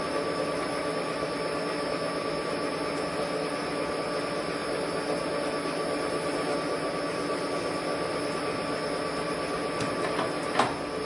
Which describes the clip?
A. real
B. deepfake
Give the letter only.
A